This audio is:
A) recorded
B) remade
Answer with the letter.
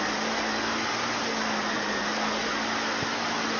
A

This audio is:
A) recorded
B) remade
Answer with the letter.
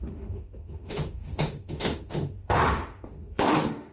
B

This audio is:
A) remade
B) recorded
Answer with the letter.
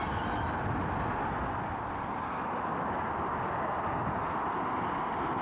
B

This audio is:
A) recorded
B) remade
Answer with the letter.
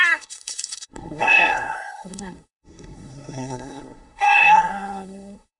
B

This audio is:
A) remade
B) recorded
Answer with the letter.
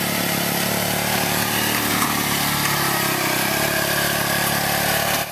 B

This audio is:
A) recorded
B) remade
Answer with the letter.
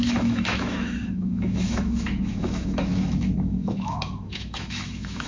B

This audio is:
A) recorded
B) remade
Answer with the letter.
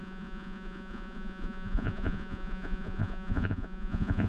B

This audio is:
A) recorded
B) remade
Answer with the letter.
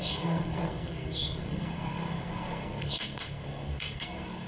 B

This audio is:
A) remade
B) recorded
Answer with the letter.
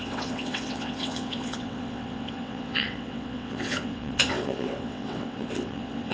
A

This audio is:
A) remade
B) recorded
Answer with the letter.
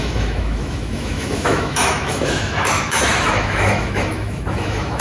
A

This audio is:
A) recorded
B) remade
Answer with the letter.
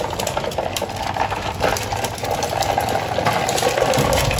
A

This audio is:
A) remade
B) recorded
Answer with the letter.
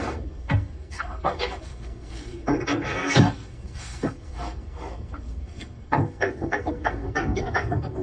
A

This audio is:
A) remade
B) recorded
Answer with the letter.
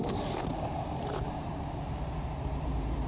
A